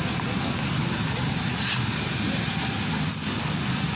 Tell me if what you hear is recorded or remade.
recorded